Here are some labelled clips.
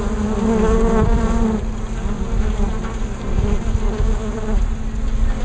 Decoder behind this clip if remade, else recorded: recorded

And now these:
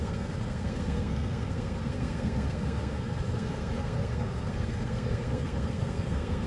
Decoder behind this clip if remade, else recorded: remade, codec, SNAC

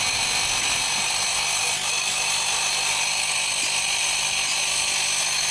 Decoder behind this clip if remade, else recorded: recorded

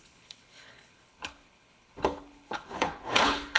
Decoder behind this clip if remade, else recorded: remade, codec, HILCodec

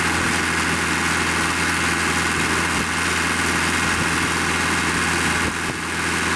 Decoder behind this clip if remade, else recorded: recorded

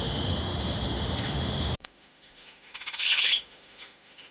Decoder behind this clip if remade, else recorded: remade, autoencoder, DAC-VAE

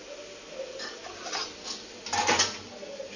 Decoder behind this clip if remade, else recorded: recorded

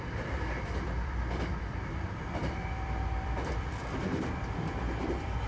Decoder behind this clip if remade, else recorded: remade, vocoder, BigVGAN v2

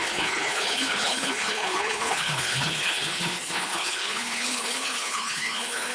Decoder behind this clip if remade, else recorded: remade, codec, HILCodec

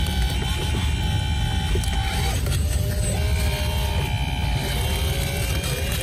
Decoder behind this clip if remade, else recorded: recorded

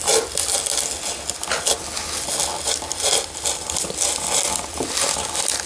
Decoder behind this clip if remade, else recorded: recorded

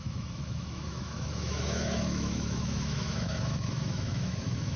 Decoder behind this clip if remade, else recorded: remade, autoencoder, DAC-VAE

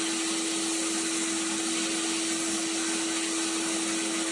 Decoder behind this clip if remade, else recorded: recorded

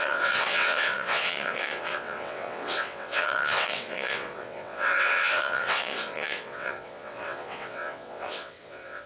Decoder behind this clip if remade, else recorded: remade, vocoder, WaveNeXt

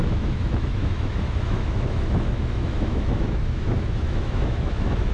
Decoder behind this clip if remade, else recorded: remade, autoencoder, DAC-VAE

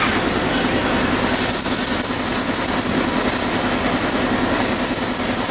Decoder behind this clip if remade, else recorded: recorded